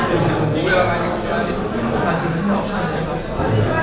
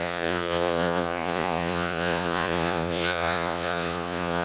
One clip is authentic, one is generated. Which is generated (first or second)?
second